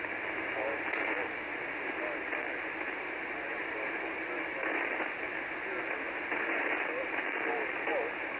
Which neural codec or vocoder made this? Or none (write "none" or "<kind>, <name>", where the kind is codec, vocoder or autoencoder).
none